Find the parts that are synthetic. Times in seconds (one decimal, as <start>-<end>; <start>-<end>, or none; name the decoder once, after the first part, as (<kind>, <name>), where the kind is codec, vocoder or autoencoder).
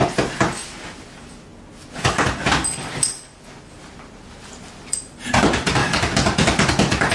none